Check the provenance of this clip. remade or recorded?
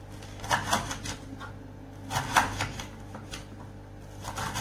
recorded